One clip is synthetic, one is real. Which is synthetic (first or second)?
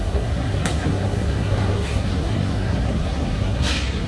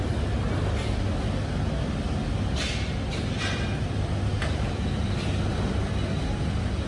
first